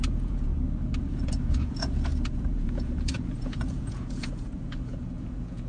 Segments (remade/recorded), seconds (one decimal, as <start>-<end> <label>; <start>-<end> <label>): 0.0-0.5 remade; 0.5-1.1 recorded; 1.1-5.7 remade